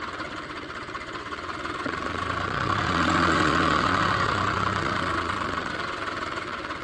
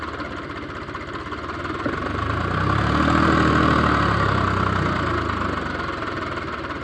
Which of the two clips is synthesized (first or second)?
first